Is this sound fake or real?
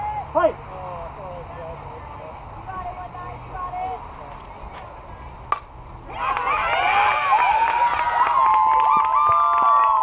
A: real